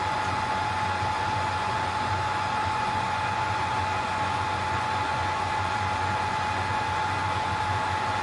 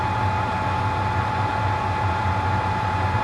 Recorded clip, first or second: second